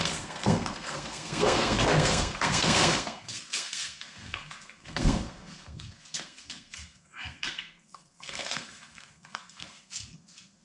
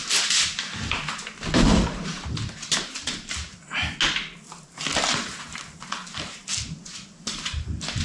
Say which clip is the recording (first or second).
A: second